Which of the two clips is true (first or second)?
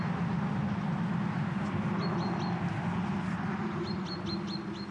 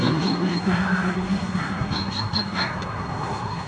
first